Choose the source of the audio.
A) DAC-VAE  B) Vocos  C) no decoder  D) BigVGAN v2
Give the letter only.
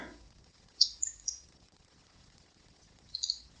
B